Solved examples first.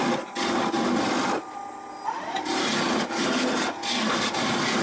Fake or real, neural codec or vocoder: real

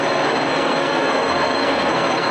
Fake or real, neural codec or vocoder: fake, codec, SNAC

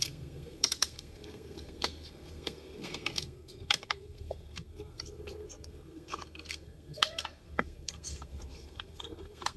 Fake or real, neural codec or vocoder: fake, codec, SNAC